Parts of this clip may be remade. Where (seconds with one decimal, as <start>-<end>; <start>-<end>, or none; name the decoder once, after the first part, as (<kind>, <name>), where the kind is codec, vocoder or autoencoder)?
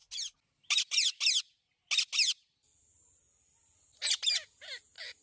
none